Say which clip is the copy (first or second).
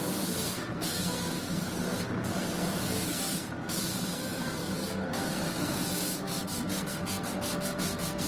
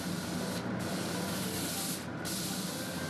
first